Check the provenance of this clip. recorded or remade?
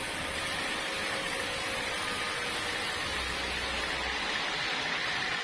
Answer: recorded